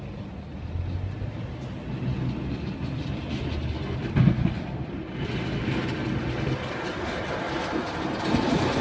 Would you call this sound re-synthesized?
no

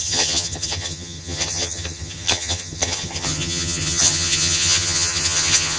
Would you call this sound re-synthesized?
yes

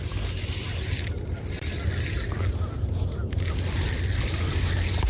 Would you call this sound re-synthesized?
no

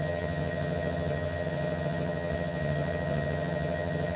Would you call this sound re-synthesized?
yes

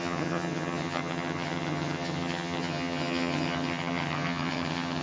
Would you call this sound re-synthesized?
yes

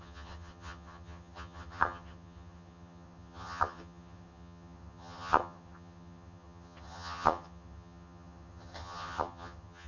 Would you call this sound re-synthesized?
yes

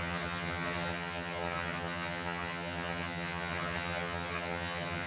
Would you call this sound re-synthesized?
yes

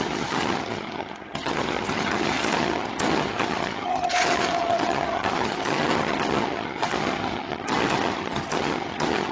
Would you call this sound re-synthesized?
yes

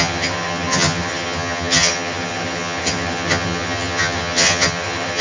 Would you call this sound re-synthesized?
yes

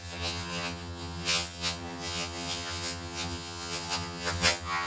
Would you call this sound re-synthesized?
yes